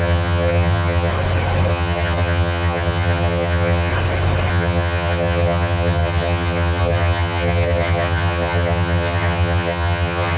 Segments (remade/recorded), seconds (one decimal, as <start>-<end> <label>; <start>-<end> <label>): 0.0-1.1 remade; 1.1-1.7 recorded; 1.7-3.9 remade; 3.9-4.5 recorded; 4.5-10.4 remade